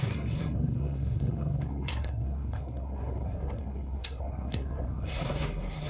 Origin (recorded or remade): remade